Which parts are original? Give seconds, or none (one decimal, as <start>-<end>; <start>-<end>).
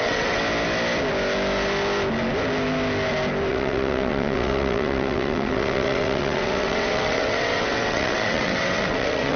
0.4-3.5